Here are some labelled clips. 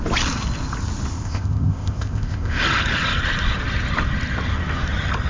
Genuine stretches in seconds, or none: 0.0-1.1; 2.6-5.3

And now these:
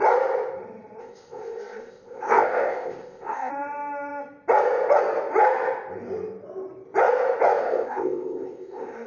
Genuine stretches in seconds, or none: 0.0-1.0; 3.5-7.6